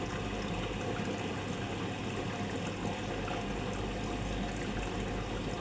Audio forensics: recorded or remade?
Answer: recorded